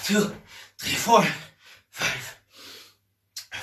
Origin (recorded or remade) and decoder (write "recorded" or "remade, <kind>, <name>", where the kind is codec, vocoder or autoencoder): recorded